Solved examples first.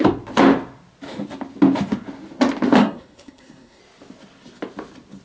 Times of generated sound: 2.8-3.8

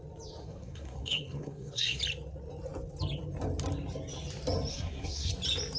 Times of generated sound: 0.4-2.0; 4.7-5.3

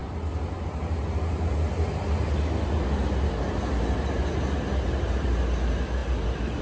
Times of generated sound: none

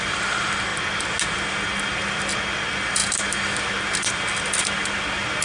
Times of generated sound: none